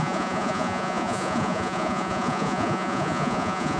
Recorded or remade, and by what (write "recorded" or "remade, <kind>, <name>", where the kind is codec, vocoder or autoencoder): remade, vocoder, Vocos